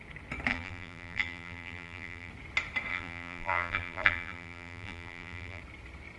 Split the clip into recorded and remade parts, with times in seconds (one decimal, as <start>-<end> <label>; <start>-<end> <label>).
0.0-0.5 recorded; 0.5-2.3 remade; 2.3-2.9 recorded; 2.9-5.6 remade; 5.6-6.2 recorded